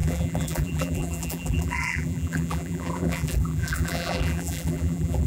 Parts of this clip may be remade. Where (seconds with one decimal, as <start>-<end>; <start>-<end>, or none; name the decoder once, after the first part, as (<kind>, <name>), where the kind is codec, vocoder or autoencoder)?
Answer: 0.0-5.3 (vocoder, BigVGAN v2)